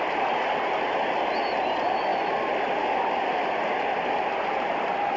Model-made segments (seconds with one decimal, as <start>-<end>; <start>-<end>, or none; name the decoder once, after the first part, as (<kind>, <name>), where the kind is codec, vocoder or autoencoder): none